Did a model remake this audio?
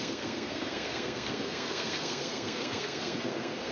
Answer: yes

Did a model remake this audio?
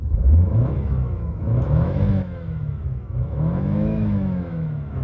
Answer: yes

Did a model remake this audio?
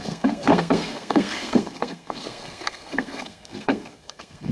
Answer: yes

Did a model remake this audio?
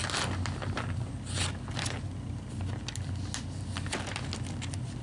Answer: no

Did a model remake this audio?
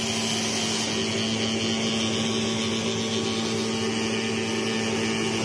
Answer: no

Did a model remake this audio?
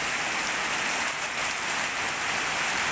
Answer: no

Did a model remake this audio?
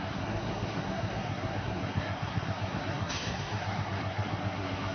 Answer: yes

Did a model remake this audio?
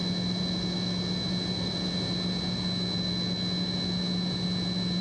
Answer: no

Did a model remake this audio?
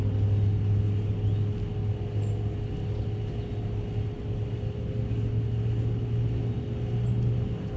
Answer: no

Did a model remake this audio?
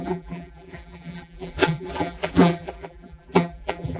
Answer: yes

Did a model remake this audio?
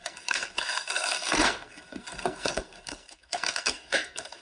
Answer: yes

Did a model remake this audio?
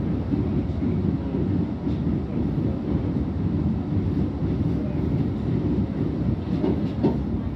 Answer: no